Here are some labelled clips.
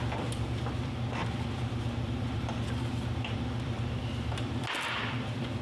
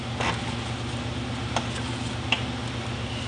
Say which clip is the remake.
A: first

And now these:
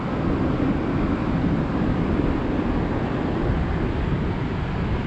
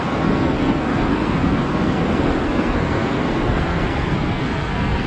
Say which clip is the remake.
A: second